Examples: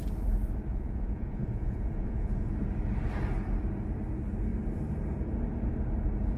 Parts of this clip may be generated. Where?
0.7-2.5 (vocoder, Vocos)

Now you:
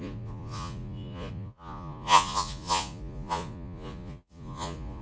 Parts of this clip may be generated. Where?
0.0-5.0 (vocoder, Vocos)

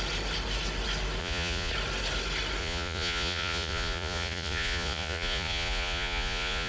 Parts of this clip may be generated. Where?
1.2-1.7 (vocoder, Vocos); 2.6-6.7